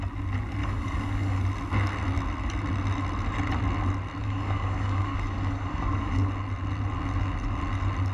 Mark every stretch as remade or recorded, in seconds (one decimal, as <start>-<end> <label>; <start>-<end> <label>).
0.0-0.6 recorded; 0.6-1.4 remade; 1.4-4.2 recorded; 4.2-6.2 remade; 6.2-8.1 recorded